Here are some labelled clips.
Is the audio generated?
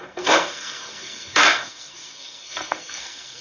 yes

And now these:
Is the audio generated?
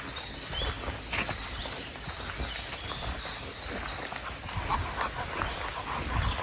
no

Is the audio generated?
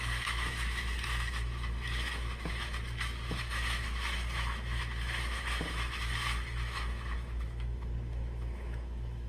yes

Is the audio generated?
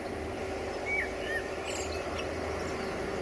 no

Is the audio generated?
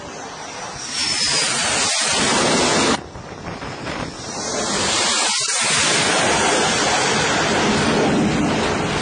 no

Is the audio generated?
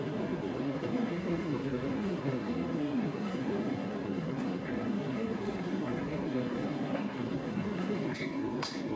yes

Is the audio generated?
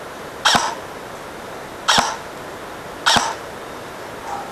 no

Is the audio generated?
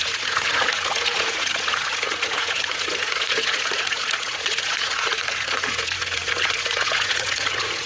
yes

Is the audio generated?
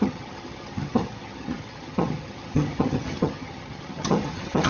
yes